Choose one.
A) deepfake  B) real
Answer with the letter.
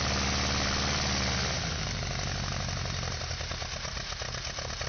B